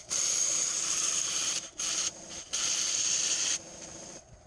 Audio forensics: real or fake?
fake